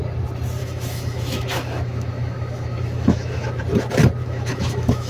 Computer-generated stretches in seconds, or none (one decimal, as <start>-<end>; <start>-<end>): 0.6-3.6; 4.2-5.1